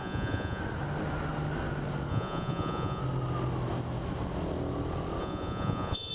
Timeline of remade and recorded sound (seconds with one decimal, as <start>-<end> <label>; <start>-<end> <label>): 0.0-0.6 remade; 0.6-2.1 recorded; 2.1-3.0 remade; 3.0-5.2 recorded; 5.2-6.1 remade